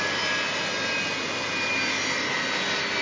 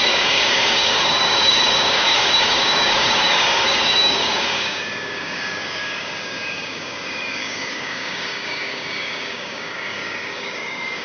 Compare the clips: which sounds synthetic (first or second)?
second